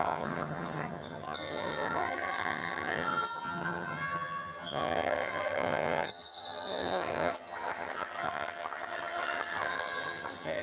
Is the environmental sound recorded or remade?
remade